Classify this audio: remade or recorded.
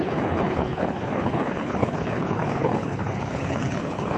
remade